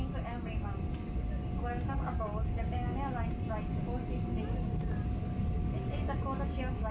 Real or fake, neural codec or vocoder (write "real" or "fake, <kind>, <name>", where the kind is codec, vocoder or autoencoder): real